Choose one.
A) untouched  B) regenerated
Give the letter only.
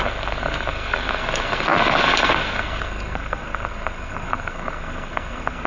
B